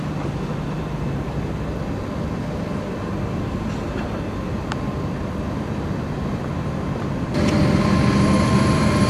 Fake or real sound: real